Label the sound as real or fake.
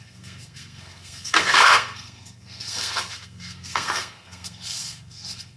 fake